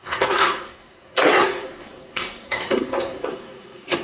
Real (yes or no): no